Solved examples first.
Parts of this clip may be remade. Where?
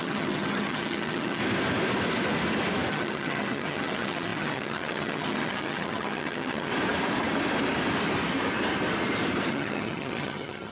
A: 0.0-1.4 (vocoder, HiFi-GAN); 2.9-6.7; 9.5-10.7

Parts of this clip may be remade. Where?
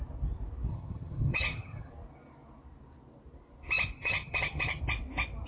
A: 0.7-1.9 (vocoder, HiFi-GAN); 4.0-4.8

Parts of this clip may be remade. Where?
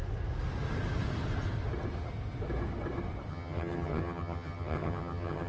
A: 3.3-5.5 (vocoder, HiFi-GAN)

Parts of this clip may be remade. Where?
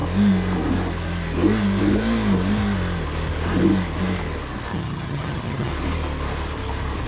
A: 4.7-5.7 (vocoder, HiFi-GAN)